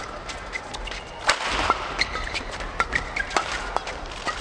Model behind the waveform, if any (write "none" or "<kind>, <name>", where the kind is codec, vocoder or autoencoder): none